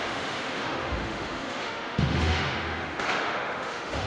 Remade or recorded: remade